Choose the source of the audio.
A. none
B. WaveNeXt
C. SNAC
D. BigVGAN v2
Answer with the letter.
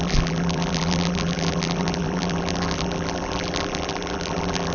D